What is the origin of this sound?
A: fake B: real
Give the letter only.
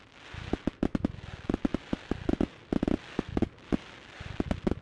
B